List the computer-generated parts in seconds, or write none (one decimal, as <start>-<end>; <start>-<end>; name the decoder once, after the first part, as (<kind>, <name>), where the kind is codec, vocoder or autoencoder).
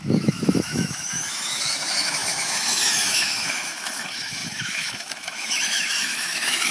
0.0-6.7 (autoencoder, DAC-VAE)